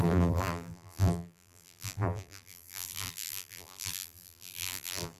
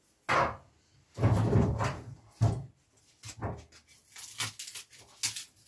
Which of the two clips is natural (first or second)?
second